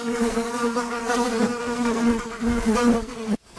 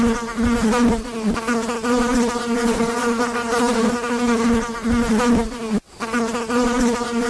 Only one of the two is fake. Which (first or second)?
first